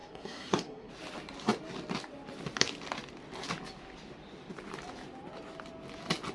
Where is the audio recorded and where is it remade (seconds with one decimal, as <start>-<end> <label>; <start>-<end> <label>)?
0.0-0.9 remade; 0.9-6.3 recorded